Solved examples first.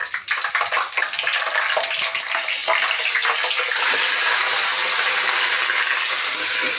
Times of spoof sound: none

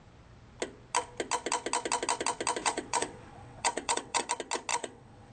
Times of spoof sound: 2.6-4.3; 4.7-5.3

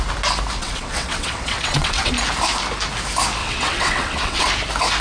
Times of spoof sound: 0.6-2.1; 3.4-4.5

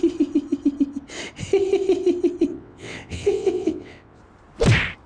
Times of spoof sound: 2.5-4.2